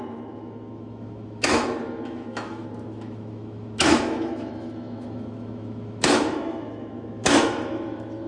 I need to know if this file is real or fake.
fake